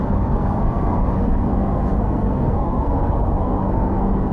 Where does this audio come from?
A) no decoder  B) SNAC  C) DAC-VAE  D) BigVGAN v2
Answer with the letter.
B